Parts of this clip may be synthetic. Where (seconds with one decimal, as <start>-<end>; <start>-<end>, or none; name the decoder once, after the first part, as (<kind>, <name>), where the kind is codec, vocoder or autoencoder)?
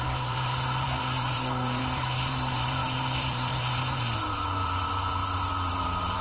0.0-6.2 (vocoder, BigVGAN v2)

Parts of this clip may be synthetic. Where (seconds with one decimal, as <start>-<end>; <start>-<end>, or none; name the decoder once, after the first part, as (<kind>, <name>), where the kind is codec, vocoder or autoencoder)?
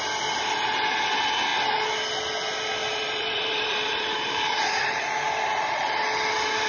2.8-5.9 (vocoder, BigVGAN v2)